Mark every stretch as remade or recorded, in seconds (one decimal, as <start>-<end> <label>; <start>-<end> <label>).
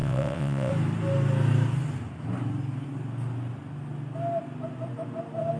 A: 0.0-0.7 remade; 0.7-5.6 recorded